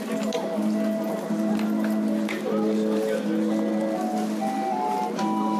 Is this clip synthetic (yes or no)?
no